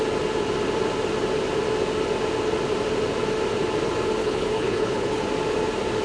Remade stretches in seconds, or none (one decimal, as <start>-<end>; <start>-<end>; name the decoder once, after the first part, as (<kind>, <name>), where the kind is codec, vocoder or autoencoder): 4.2-5.2 (codec, HILCodec)